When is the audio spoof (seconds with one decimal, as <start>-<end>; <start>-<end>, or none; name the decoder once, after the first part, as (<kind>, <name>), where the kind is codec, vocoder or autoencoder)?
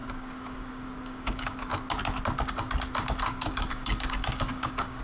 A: 0.0-1.7 (codec, DAC); 3.3-5.0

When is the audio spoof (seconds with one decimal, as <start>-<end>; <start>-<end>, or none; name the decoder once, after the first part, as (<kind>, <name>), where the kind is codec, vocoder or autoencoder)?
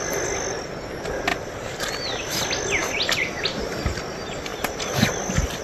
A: 2.8-4.0 (vocoder, BigVGAN v2)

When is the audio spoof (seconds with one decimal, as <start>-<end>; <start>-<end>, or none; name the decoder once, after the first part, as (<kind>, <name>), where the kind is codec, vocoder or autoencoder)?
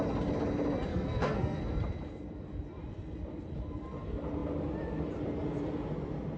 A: 0.9-1.6 (codec, SNAC)